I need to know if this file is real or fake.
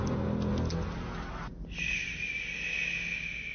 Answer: real